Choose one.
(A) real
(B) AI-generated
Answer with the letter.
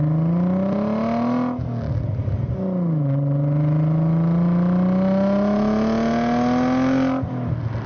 A